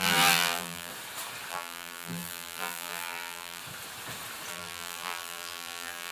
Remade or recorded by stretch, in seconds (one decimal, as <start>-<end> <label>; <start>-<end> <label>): 0.0-0.9 remade; 0.9-1.5 recorded; 1.5-3.6 remade; 3.6-4.5 recorded; 4.5-6.1 remade

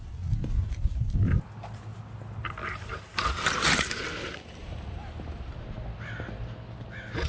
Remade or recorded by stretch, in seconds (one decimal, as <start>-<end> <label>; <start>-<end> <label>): 0.0-4.6 recorded; 4.6-5.5 remade; 5.5-7.3 recorded

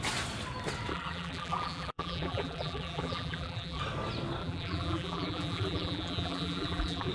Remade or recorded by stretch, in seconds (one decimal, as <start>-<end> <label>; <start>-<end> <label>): 0.0-0.9 recorded; 0.9-3.8 remade; 3.8-4.4 recorded; 4.4-7.1 remade

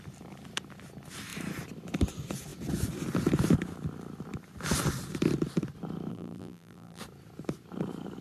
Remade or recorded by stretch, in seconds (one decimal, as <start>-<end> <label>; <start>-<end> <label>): 0.0-6.1 recorded; 6.1-7.0 remade; 7.0-8.2 recorded

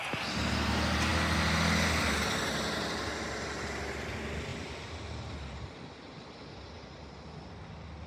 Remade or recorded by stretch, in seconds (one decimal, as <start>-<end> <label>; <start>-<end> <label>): 0.0-8.1 recorded